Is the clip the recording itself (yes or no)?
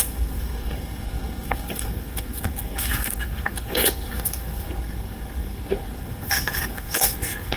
no